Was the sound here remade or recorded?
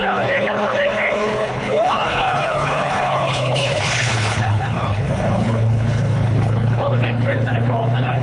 remade